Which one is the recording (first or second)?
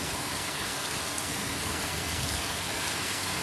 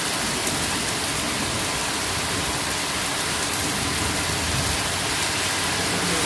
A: second